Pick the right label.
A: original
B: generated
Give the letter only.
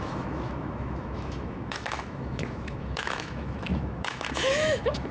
B